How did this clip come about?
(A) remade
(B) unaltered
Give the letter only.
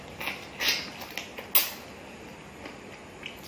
B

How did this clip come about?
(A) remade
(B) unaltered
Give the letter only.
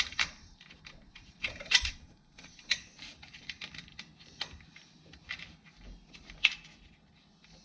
B